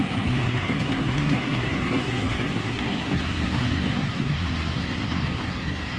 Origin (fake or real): fake